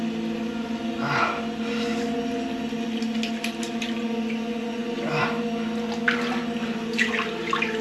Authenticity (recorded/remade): recorded